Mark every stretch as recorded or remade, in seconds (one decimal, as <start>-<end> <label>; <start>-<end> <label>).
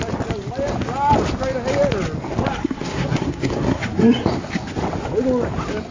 0.0-2.6 recorded; 2.6-3.8 remade; 3.8-5.9 recorded